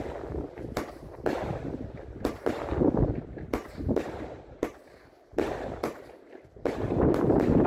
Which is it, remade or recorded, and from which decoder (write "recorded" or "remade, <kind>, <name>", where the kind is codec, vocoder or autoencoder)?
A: recorded